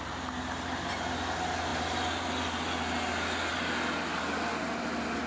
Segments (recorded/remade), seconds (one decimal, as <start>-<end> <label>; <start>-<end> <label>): 0.0-5.3 recorded